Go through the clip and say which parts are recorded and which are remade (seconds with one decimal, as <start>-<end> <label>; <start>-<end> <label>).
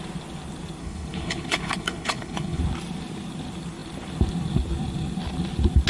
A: 0.0-0.8 recorded; 0.8-2.6 remade; 2.6-5.9 recorded